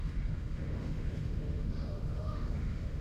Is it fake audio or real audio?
fake